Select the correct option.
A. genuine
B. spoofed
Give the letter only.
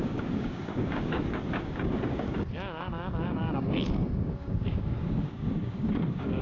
B